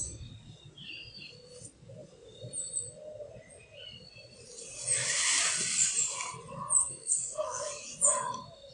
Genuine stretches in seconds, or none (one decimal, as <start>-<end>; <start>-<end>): 0.0-6.8; 7.7-8.7